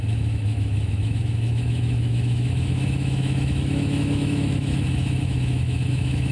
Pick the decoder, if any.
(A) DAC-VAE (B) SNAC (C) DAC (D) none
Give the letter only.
A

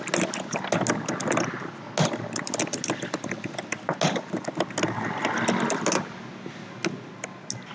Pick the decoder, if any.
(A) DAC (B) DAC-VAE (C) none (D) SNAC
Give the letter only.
C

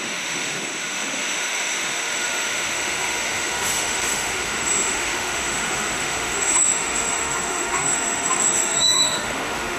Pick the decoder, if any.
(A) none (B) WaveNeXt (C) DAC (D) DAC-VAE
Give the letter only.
D